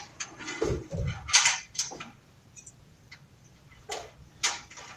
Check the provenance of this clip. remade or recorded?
remade